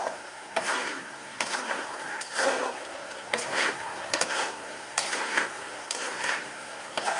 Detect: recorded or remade remade